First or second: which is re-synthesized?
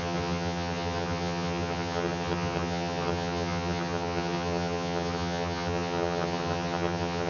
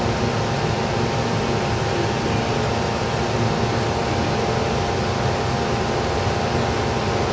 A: first